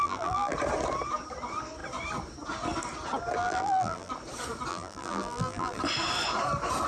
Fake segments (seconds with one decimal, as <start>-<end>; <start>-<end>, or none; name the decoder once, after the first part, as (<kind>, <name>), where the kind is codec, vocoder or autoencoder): 0.0-0.5 (vocoder, BigVGAN v2); 3.4-4.1; 4.7-5.8